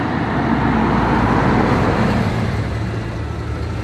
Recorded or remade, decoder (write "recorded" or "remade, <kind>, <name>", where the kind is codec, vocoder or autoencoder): recorded